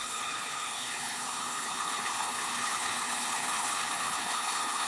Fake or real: fake